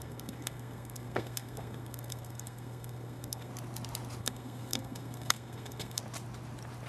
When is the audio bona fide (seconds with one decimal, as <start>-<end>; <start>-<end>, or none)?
3.5-4.2; 6.0-6.9